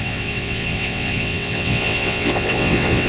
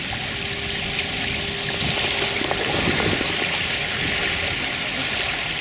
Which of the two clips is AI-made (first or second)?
first